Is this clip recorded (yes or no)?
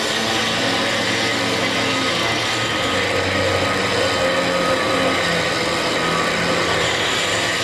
yes